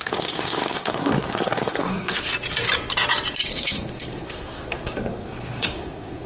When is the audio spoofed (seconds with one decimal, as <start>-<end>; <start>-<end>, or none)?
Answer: 0.0-2.3; 3.5-6.3